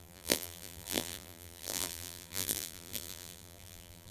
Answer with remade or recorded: remade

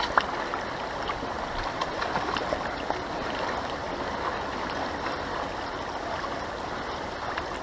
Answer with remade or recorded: recorded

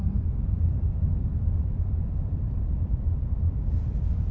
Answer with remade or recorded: remade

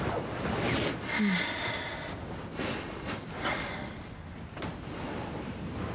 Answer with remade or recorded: recorded